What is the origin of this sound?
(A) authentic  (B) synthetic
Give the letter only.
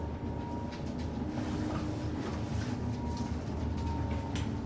A